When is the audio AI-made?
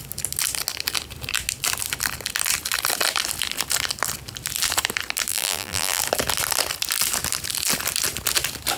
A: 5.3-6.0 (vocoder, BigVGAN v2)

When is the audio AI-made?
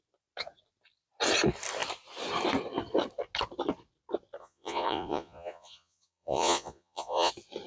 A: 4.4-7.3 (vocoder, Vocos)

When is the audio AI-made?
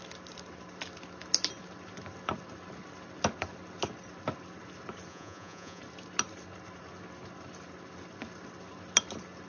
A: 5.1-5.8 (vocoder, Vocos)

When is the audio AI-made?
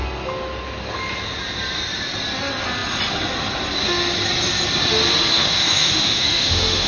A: 5.3-6.9 (autoencoder, DAC-VAE)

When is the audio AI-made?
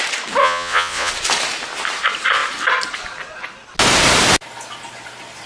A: 0.4-1.1 (vocoder, Vocos)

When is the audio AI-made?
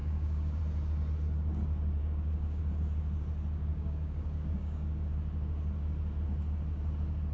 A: 0.0-0.6 (codec, DAC); 2.0-2.6; 3.7-5.1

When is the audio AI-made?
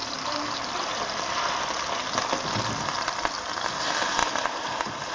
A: 0.0-0.9 (vocoder, BigVGAN v2); 4.2-5.1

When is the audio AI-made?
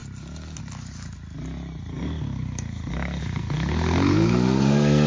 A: 1.9-5.1 (codec, SNAC)